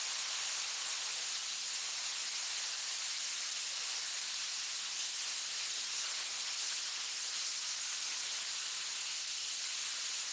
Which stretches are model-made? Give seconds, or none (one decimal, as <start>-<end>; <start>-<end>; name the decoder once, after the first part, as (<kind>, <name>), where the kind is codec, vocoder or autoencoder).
4.8-7.6 (codec, SNAC)